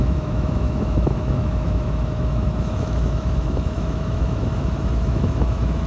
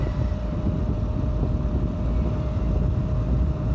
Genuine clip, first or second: second